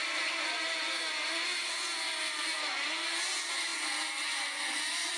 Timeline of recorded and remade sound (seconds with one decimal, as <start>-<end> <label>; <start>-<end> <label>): 0.0-0.8 remade; 0.8-5.2 recorded